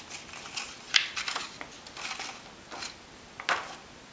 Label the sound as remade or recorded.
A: recorded